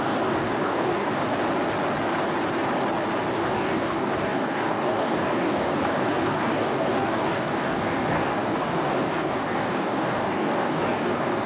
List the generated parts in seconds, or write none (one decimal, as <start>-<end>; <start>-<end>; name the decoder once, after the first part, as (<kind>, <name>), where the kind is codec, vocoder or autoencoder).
0.0-1.2 (codec, DAC); 3.3-11.5